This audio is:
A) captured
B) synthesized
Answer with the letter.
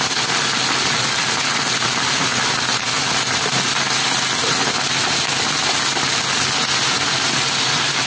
A